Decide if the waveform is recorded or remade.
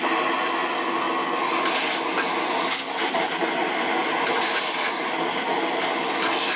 recorded